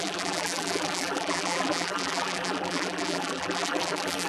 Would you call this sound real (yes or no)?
no